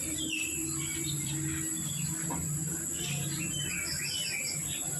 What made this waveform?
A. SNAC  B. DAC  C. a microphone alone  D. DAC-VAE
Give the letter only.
C